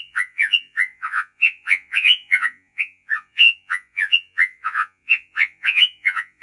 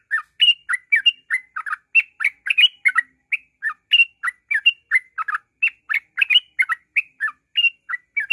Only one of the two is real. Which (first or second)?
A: second